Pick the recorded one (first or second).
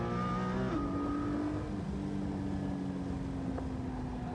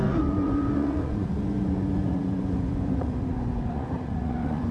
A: first